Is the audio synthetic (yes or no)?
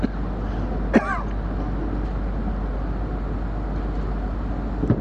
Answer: no